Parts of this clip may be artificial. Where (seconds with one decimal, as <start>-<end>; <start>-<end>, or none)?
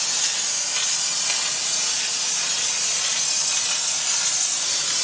none